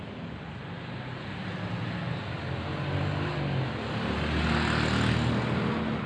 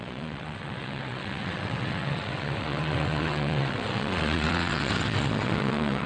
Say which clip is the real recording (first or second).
first